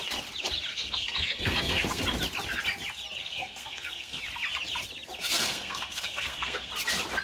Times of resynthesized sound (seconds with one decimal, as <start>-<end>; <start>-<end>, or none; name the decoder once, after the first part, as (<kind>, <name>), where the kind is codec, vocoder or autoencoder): 0.7-2.0 (codec, SNAC); 3.2-4.2; 5.2-6.7

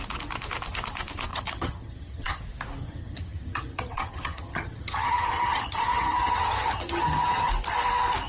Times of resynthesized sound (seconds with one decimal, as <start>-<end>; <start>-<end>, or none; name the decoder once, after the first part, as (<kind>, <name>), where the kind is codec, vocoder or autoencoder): 1.3-2.4 (vocoder, HiFi-GAN); 2.8-7.5